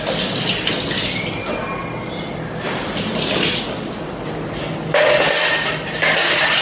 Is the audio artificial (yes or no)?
no